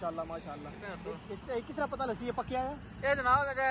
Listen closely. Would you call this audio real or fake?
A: real